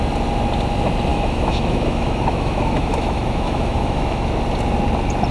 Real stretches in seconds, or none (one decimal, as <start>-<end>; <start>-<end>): 0.0-1.1; 4.3-5.3